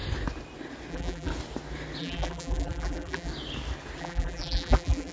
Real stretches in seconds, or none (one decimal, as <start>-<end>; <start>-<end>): 0.0-0.9; 1.3-2.0; 3.3-4.0